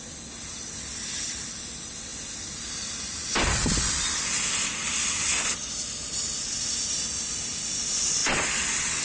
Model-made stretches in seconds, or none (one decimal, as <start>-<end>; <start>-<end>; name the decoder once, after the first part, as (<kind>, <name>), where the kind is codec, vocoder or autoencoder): none